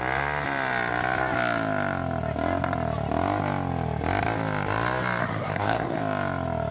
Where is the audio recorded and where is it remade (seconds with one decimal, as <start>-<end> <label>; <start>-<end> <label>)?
0.0-5.2 recorded; 5.2-6.0 remade; 6.0-6.7 recorded